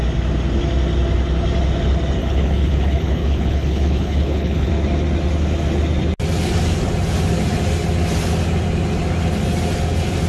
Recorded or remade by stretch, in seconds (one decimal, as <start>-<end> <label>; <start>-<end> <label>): 0.0-2.2 recorded; 2.2-4.7 remade; 4.7-10.3 recorded

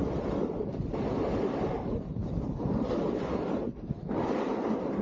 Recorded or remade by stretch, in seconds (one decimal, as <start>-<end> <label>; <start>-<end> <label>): 0.0-5.0 recorded

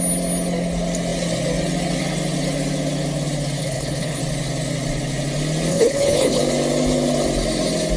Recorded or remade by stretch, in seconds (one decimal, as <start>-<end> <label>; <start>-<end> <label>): 0.0-3.6 recorded; 3.6-4.2 remade; 4.2-5.7 recorded; 5.7-6.4 remade; 6.4-8.0 recorded

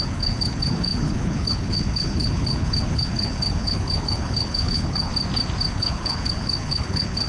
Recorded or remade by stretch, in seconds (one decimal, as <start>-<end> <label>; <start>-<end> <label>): 0.0-5.1 remade; 5.1-5.7 recorded; 5.7-7.3 remade

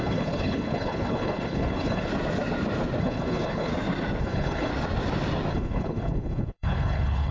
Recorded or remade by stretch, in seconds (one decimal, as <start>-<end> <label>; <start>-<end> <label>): 0.0-2.1 remade; 2.1-3.0 recorded; 3.0-3.7 remade; 3.7-4.2 recorded; 4.2-4.7 remade; 4.7-5.5 recorded; 5.5-7.3 remade

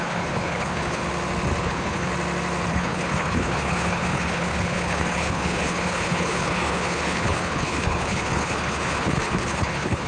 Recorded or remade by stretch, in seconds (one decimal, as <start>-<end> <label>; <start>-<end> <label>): 0.0-1.0 remade; 1.0-1.6 recorded; 1.6-2.1 remade; 2.1-2.7 recorded; 2.7-10.1 remade